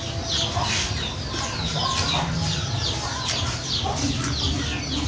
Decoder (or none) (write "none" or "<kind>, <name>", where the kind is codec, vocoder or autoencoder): none